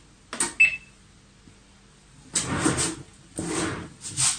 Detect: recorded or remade recorded